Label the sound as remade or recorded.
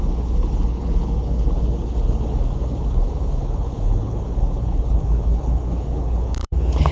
remade